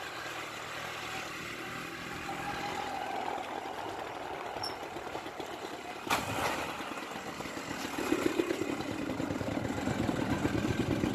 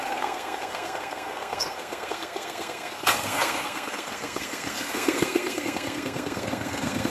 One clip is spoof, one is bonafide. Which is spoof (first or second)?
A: second